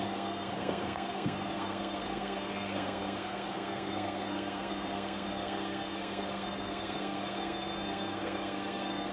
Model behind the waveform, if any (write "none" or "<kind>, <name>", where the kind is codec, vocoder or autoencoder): codec, SNAC